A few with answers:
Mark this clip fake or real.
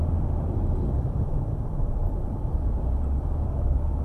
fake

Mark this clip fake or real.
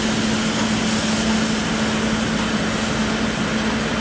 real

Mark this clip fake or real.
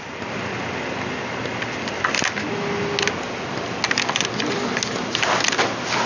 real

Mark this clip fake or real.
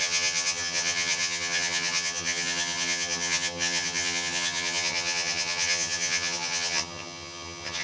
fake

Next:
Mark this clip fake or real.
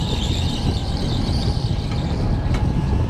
real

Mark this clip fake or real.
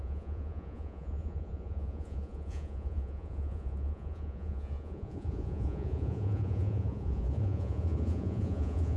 fake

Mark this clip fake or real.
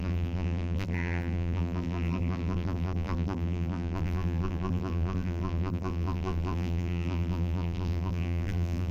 fake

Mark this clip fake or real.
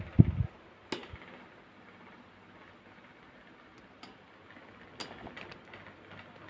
real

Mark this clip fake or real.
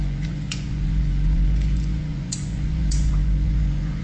fake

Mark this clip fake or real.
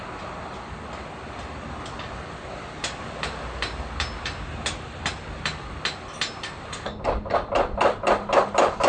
real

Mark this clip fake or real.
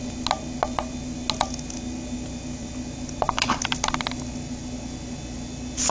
real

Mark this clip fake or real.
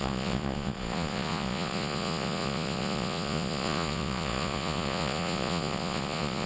fake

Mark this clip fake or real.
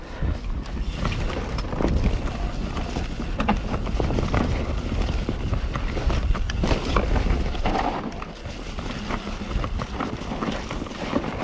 real